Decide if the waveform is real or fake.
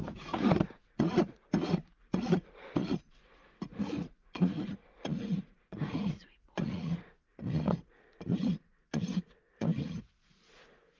fake